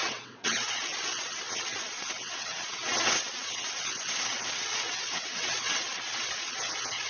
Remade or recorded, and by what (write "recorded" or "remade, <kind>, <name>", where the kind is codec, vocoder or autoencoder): remade, vocoder, WaveNeXt